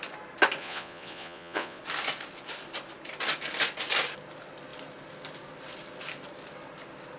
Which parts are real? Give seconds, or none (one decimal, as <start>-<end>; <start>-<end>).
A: 0.0-0.6; 1.8-7.2